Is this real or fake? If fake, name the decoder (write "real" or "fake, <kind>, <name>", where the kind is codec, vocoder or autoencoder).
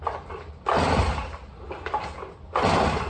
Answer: real